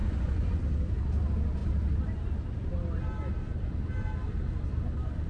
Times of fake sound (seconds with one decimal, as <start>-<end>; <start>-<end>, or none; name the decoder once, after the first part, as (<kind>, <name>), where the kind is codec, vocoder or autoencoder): 0.0-0.6 (vocoder, Vocos)